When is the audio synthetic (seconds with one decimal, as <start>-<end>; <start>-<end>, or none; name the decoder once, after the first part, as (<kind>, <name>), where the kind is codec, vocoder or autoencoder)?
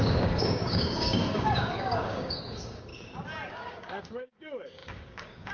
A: 0.0-2.9 (codec, DAC); 3.5-5.5